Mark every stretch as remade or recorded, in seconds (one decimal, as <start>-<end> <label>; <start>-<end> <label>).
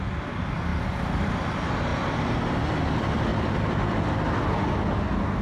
0.0-0.7 recorded; 0.7-1.2 remade; 1.2-1.9 recorded; 1.9-2.5 remade; 2.5-3.3 recorded; 3.3-4.2 remade; 4.2-5.4 recorded